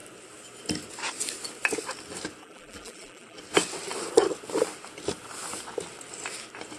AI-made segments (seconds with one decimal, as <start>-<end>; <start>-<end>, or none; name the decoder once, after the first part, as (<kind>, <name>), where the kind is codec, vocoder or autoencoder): 2.4-3.4 (vocoder, BigVGAN v2)